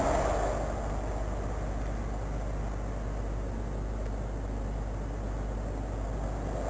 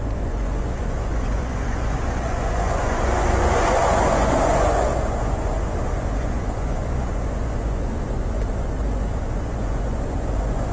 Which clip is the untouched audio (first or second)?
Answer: first